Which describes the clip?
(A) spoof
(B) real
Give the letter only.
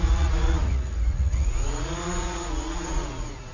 A